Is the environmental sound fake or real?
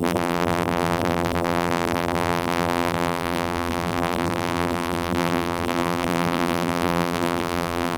fake